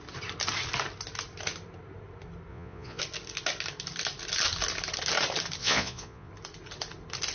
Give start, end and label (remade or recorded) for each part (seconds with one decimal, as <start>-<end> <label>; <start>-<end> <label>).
0.0-2.5 recorded; 2.5-3.0 remade; 3.0-5.6 recorded; 5.6-6.3 remade; 6.3-7.3 recorded